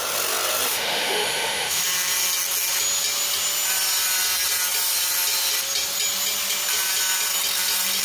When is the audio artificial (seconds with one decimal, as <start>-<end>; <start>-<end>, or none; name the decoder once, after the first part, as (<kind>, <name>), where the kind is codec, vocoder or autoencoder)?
0.7-1.8 (autoencoder, DAC-VAE)